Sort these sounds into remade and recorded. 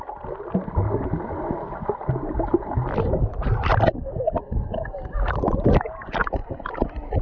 recorded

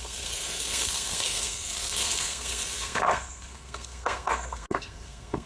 remade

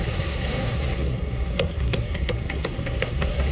remade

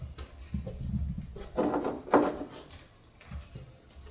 recorded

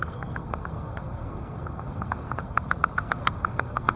remade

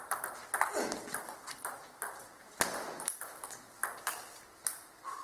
recorded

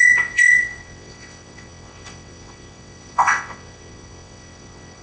remade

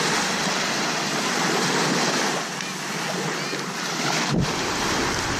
recorded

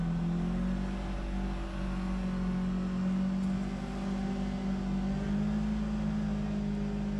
recorded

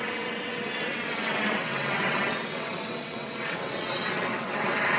remade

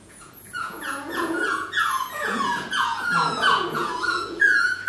remade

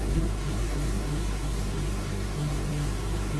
remade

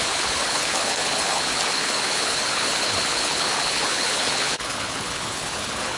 remade